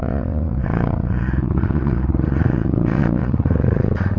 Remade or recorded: remade